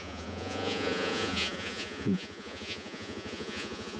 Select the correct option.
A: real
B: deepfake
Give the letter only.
B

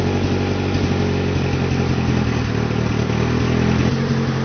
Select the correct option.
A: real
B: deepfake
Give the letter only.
A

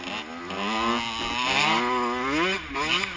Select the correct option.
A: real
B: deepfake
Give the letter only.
A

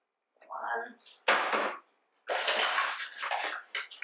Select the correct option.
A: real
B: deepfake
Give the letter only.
A